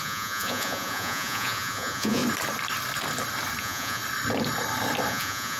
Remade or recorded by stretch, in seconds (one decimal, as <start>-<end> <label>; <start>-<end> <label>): 0.0-2.2 remade; 2.2-3.6 recorded; 3.6-4.0 remade; 4.0-5.1 recorded; 5.1-5.6 remade